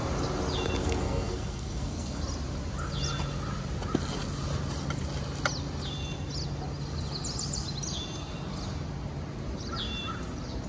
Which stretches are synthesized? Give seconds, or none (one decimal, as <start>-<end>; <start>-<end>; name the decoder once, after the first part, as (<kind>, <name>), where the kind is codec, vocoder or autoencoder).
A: 0.8-2.2 (codec, SNAC)